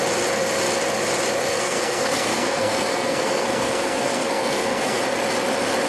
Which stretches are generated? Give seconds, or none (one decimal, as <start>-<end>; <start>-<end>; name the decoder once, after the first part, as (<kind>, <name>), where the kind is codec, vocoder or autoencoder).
1.5-5.0 (codec, SNAC)